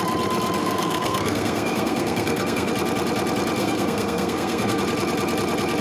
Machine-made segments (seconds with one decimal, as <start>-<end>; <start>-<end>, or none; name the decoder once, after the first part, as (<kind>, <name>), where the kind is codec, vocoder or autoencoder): 0.6-2.7 (codec, SNAC); 3.6-4.8